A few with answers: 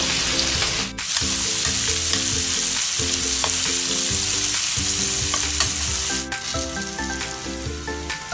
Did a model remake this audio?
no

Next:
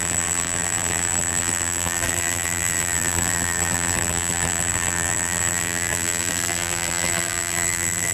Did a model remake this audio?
yes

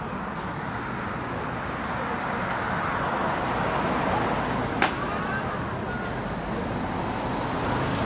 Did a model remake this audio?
no